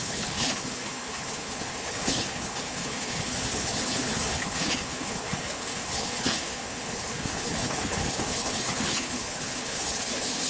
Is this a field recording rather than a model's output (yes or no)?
no